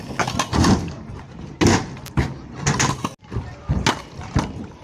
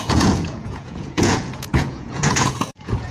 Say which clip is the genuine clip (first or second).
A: first